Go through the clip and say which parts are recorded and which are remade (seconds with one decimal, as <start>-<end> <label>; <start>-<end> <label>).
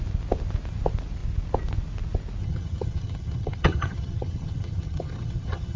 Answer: 0.0-2.4 recorded; 2.4-5.8 remade